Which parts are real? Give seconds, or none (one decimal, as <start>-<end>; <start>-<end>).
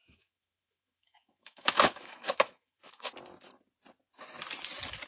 3.1-5.1